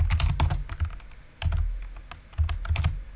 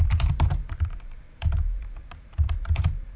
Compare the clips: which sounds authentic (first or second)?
first